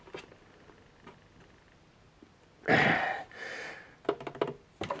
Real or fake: real